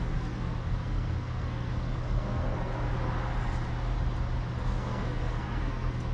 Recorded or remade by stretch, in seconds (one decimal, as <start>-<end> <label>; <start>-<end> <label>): 0.0-2.9 remade; 2.9-4.6 recorded; 4.6-6.1 remade

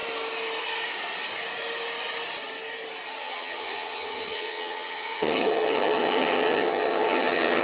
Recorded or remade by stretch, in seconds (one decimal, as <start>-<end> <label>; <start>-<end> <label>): 0.0-3.2 recorded; 3.2-7.6 remade